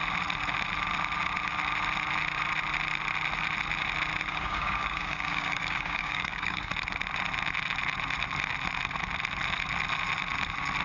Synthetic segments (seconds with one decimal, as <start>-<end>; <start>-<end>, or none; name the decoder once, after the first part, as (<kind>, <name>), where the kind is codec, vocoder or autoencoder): 4.3-6.7 (codec, DAC)